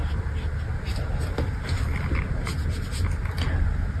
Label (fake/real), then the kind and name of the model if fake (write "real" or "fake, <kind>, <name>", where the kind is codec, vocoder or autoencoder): real